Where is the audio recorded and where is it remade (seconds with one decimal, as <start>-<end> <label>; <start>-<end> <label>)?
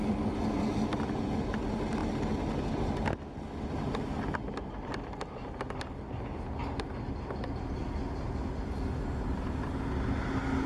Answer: 0.0-10.7 recorded